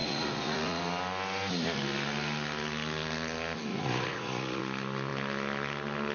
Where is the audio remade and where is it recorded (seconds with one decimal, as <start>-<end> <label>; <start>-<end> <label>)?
0.0-0.8 remade; 0.8-3.7 recorded; 3.7-4.6 remade; 4.6-6.1 recorded